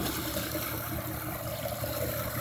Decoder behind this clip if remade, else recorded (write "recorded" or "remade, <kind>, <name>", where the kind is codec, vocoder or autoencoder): recorded